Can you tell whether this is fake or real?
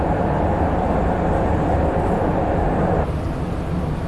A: real